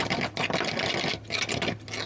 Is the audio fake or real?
real